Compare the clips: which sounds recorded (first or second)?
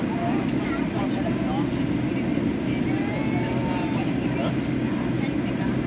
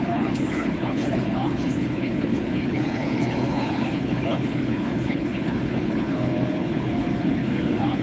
first